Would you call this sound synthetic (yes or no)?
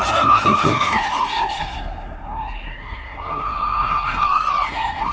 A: yes